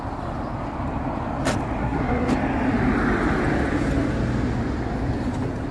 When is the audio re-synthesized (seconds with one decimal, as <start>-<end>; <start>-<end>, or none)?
1.8-2.3